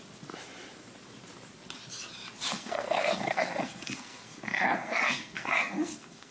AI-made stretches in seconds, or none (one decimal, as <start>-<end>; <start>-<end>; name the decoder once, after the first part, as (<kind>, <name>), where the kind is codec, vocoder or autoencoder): 2.5-6.3 (codec, SNAC)

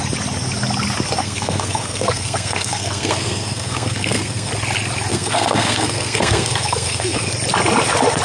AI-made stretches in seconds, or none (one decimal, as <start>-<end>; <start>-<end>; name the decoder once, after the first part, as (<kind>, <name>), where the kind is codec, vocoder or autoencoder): 1.2-4.5 (codec, SNAC); 5.1-7.3

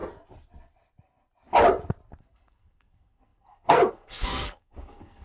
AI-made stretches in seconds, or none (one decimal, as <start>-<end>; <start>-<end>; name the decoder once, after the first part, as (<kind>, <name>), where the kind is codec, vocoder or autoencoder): 2.2-5.2 (codec, SNAC)